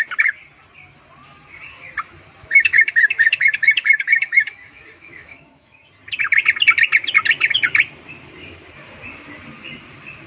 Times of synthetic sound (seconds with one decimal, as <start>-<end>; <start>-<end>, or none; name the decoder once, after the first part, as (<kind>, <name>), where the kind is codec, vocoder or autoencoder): 2.4-5.8 (autoencoder, DAC-VAE)